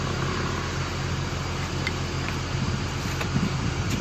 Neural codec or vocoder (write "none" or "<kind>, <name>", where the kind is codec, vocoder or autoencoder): none